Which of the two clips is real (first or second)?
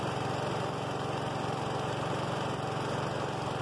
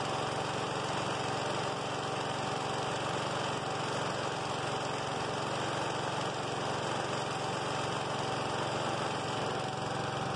second